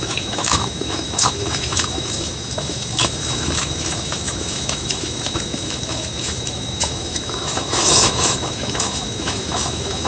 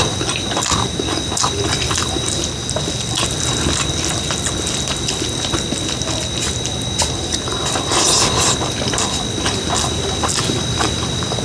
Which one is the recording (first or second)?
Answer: second